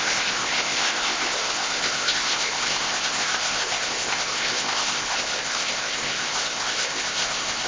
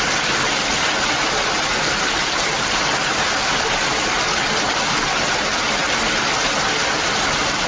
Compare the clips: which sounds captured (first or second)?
second